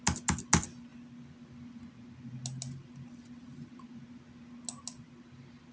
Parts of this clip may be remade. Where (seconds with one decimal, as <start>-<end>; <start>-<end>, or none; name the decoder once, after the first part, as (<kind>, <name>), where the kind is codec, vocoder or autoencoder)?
none